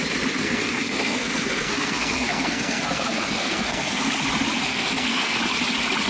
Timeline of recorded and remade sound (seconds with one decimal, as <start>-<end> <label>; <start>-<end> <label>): 0.0-0.4 recorded; 0.4-4.0 remade; 4.0-4.7 recorded; 4.7-5.4 remade; 5.4-6.1 recorded